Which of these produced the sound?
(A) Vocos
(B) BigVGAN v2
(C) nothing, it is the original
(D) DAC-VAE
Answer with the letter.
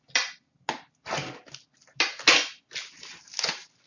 C